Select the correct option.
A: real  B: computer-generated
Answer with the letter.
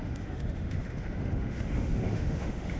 B